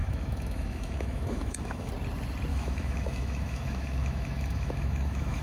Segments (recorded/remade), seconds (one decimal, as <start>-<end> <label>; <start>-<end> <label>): 0.0-1.9 remade; 1.9-2.5 recorded; 2.5-5.4 remade